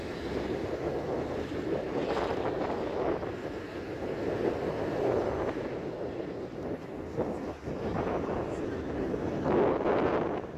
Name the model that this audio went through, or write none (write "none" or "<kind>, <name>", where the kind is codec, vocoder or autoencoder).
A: none